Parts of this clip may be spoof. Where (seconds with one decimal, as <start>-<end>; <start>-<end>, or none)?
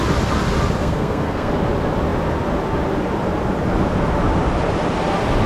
0.8-1.5